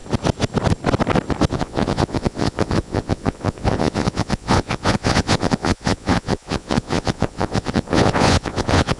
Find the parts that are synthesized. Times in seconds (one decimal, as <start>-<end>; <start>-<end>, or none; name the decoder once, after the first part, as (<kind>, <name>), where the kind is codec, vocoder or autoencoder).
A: 1.5-9.0 (vocoder, Vocos)